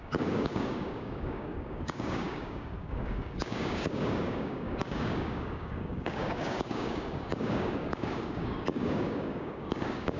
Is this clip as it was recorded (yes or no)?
no